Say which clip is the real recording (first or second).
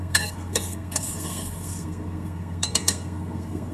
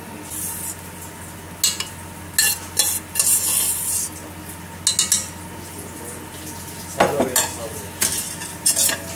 second